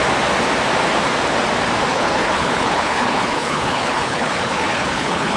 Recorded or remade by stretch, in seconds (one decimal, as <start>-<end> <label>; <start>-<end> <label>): 0.0-1.9 recorded; 1.9-5.4 remade